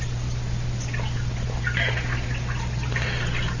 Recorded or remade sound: recorded